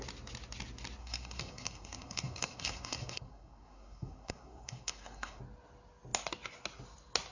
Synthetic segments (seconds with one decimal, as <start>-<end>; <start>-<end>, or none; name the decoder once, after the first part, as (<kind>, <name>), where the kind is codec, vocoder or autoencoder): 1.0-5.4 (codec, SNAC)